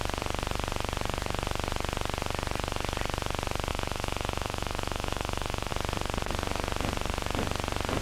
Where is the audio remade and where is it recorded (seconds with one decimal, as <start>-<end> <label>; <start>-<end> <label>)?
0.0-3.7 recorded; 3.7-5.7 remade; 5.7-8.0 recorded

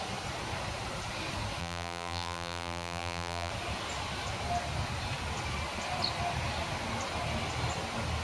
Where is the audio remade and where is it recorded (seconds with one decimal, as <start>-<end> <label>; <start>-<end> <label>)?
0.0-1.6 recorded; 1.6-3.5 remade; 3.5-8.2 recorded